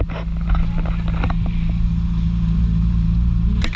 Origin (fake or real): real